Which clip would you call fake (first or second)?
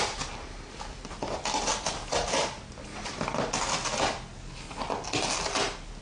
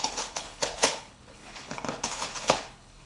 second